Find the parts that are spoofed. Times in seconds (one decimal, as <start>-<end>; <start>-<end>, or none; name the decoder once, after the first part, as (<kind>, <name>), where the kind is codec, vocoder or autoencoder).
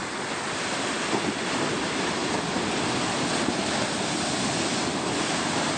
0.5-5.8 (vocoder, BigVGAN v2)